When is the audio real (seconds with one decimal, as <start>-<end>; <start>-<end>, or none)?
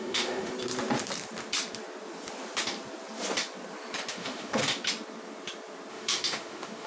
0.5-4.1; 4.6-5.9